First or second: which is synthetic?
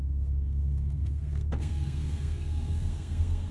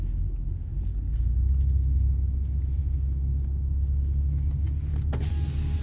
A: first